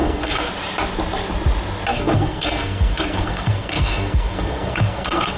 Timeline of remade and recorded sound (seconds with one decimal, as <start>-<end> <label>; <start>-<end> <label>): 0.0-0.5 remade; 0.5-1.9 recorded; 1.9-5.4 remade

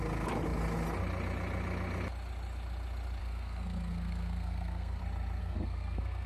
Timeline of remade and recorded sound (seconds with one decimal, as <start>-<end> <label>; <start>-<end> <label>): 0.0-3.2 recorded; 3.2-5.0 remade; 5.0-5.4 recorded; 5.4-6.3 remade

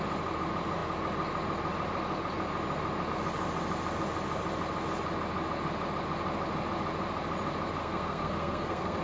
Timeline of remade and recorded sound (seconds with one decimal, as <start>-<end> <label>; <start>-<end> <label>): 0.0-7.8 recorded; 7.8-9.0 remade

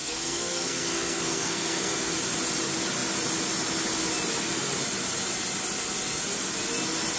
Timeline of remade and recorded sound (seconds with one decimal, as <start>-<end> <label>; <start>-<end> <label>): 0.0-2.1 remade; 2.1-7.2 recorded

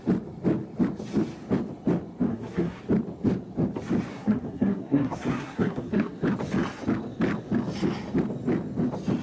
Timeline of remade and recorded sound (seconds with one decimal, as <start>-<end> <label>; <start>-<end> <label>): 0.0-2.3 recorded; 2.3-2.8 remade; 2.8-4.1 recorded; 4.1-6.2 remade; 6.2-9.2 recorded

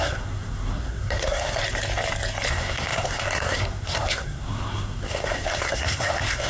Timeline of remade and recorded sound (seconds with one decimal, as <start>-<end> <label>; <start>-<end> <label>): 0.0-1.6 remade; 1.6-2.5 recorded; 2.5-6.5 remade

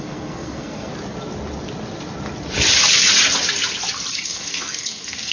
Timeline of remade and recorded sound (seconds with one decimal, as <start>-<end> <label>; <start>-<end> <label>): 0.0-0.9 remade; 0.9-4.1 recorded; 4.1-5.3 remade

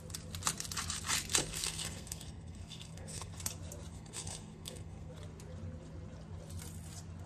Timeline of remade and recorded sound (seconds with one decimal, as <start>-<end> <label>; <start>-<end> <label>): 0.0-1.4 recorded; 1.4-3.3 remade; 3.3-3.9 recorded; 3.9-5.1 remade; 5.1-7.3 recorded